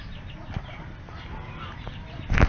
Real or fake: real